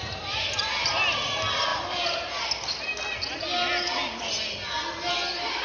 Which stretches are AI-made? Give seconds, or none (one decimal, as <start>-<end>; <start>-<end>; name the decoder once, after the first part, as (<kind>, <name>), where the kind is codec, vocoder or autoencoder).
none